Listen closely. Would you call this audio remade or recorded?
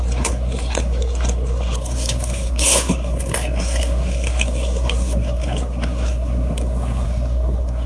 remade